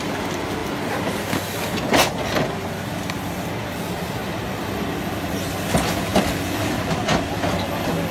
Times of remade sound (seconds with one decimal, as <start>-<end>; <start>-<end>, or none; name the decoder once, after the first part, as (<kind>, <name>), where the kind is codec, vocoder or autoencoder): 4.2-5.3 (vocoder, BigVGAN v2); 6.1-7.2